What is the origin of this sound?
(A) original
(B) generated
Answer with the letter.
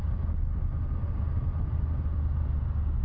A